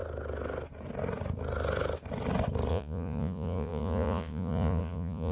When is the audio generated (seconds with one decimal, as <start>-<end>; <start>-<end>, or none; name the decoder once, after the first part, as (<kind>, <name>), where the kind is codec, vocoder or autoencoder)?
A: 2.7-5.3 (vocoder, Vocos)